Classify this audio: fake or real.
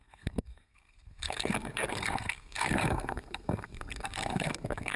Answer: fake